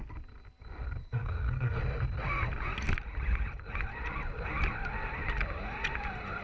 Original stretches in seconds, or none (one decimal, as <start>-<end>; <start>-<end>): 0.0-1.0; 1.8-6.4